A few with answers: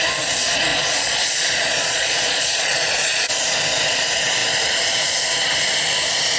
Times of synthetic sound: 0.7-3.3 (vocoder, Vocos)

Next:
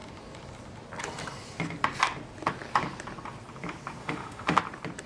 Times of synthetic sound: 4.0-4.6 (autoencoder, DAC-VAE)

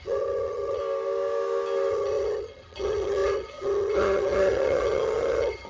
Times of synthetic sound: 0.0-0.8 (vocoder, HiFi-GAN); 1.9-5.7